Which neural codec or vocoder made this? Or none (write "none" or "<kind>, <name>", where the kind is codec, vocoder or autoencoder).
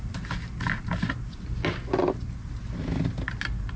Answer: none